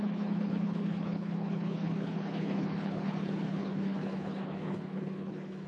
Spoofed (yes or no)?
yes